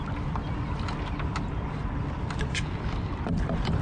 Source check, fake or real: real